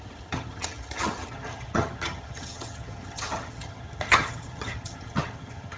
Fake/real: fake